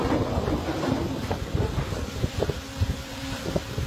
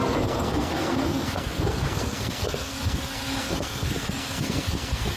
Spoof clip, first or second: second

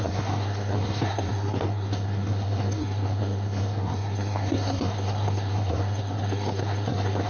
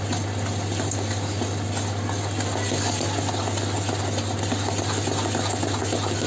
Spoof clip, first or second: first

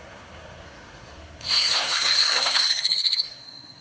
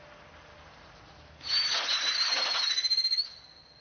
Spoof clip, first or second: first